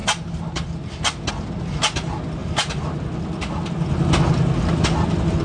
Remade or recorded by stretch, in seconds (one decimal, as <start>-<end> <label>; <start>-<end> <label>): 0.0-5.4 recorded